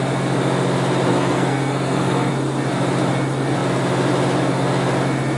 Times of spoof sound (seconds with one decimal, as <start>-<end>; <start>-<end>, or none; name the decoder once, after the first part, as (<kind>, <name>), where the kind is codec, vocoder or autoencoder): 1.1-2.3 (codec, SNAC)